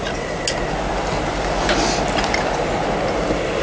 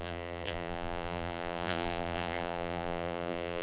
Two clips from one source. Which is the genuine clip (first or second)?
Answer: first